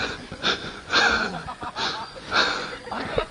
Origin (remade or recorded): remade